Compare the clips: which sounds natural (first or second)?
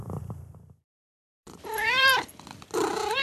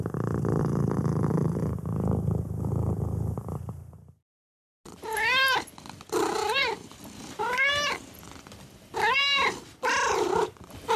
second